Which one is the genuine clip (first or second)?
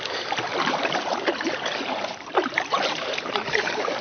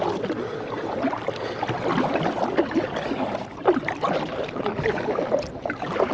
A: second